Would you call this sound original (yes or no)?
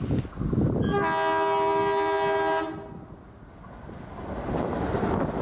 yes